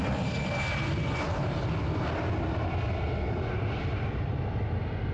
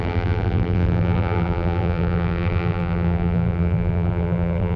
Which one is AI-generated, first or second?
second